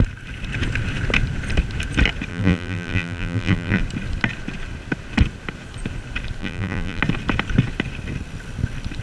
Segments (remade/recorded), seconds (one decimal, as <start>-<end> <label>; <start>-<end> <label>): 0.0-2.3 recorded; 2.3-3.8 remade; 3.8-6.4 recorded; 6.4-7.0 remade; 7.0-9.0 recorded